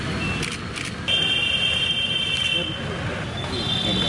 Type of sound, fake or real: real